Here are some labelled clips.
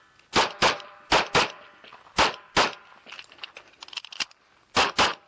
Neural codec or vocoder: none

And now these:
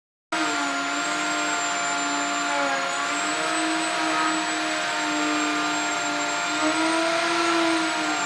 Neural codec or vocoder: none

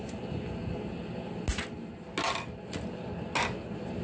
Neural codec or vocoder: none